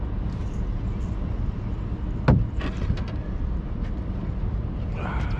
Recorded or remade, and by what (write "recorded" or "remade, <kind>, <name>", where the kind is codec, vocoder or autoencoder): recorded